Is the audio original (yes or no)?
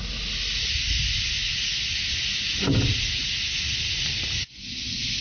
yes